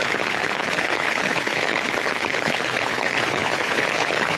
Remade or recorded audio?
remade